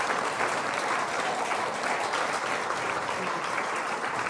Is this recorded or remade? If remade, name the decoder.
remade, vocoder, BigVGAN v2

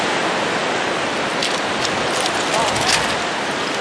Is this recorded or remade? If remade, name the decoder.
recorded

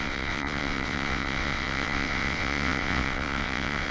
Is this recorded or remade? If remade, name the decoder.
remade, vocoder, WaveNeXt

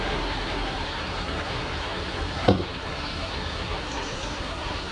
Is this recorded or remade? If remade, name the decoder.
remade, codec, SNAC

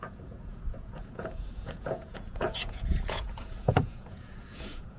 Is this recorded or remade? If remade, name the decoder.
remade, vocoder, Vocos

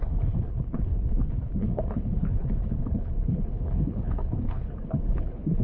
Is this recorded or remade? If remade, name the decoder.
remade, codec, HILCodec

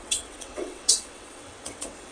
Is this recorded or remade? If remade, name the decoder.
remade, vocoder, WaveNeXt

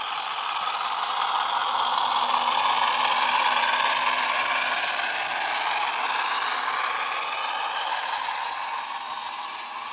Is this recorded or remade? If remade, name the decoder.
recorded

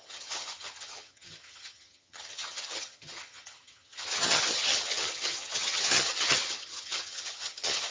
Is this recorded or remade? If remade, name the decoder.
remade, vocoder, HiFi-GAN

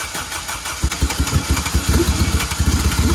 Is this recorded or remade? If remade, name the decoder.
recorded